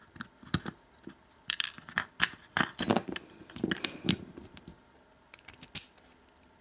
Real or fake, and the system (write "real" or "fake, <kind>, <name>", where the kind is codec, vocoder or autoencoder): real